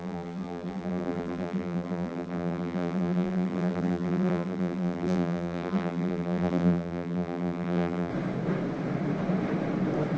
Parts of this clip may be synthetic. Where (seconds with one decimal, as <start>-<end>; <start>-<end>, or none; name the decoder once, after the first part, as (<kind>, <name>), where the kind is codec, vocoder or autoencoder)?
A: 0.0-8.1 (vocoder, BigVGAN v2)